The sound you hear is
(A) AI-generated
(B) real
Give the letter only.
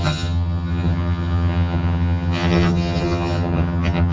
A